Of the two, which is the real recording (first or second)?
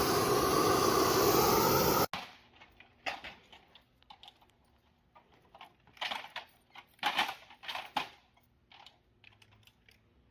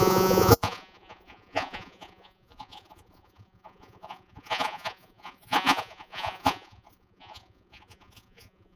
first